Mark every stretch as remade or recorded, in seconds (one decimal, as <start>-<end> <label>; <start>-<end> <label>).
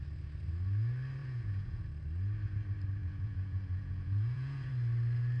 0.0-1.2 recorded; 1.2-1.8 remade; 1.8-3.0 recorded; 3.0-4.7 remade; 4.7-5.4 recorded